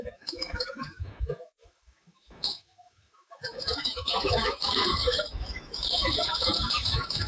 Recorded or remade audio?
remade